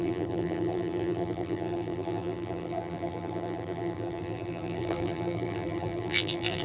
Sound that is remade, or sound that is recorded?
remade